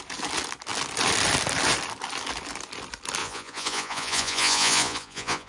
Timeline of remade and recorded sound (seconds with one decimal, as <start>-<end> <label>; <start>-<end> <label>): 0.0-3.2 recorded; 3.2-5.5 remade